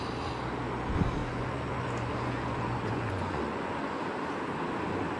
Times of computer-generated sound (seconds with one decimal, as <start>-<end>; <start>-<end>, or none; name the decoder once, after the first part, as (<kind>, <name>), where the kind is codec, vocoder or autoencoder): 1.2-4.0 (vocoder, Vocos)